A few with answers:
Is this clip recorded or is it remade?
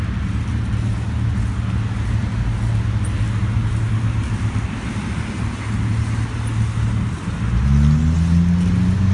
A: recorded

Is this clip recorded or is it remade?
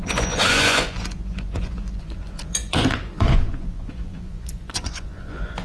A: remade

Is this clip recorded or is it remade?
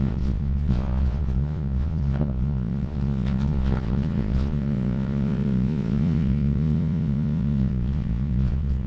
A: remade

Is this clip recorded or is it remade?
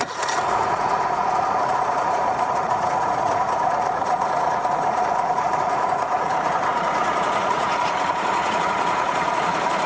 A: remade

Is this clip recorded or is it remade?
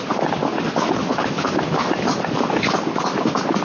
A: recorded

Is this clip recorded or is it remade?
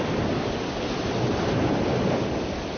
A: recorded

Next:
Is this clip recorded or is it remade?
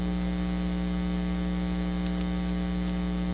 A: recorded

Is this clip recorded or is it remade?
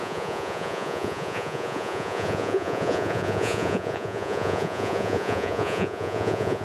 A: remade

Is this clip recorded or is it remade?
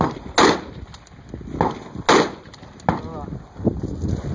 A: recorded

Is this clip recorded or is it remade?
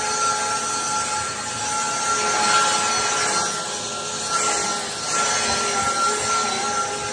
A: recorded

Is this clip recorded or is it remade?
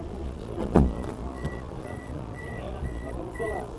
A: remade